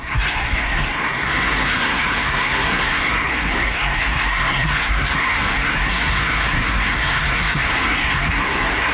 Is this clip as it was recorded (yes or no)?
no